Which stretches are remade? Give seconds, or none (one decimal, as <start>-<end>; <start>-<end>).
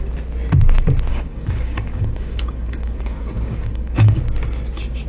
1.1-4.2